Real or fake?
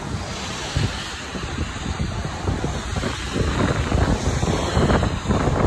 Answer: real